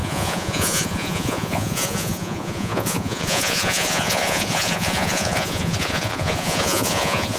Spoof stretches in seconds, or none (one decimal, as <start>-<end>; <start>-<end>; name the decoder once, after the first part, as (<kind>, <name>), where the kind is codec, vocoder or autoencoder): 0.0-7.4 (vocoder, Vocos)